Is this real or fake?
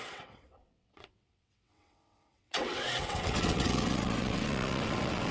fake